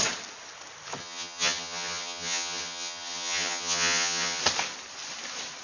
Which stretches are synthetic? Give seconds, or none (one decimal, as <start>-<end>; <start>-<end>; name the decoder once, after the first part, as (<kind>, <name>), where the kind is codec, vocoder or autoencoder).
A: 1.0-4.4 (vocoder, HiFi-GAN)